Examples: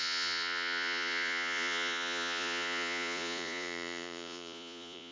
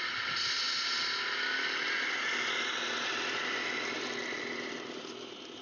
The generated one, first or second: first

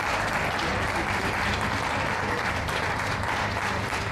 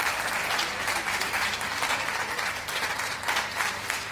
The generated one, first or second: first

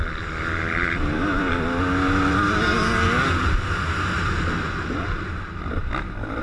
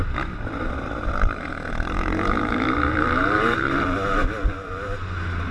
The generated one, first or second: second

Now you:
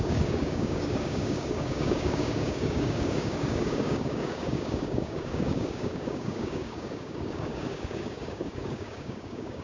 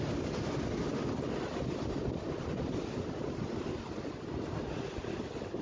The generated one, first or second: first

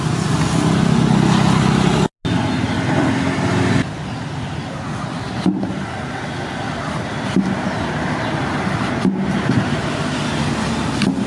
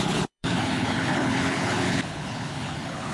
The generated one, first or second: second